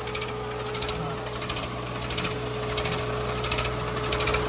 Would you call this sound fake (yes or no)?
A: no